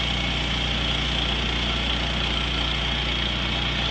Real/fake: real